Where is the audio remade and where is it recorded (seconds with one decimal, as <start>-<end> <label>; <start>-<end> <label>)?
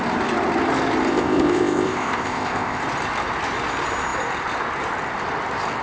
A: 0.0-1.1 recorded; 1.1-2.8 remade; 2.8-5.8 recorded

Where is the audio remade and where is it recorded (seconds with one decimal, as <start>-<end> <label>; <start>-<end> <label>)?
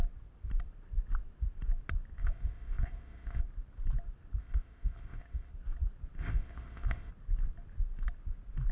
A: 0.0-2.2 recorded; 2.2-3.4 remade; 3.4-4.4 recorded; 4.4-5.5 remade; 5.5-6.2 recorded; 6.2-7.1 remade; 7.1-8.7 recorded